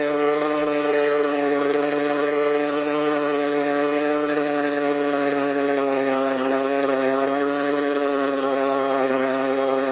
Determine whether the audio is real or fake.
fake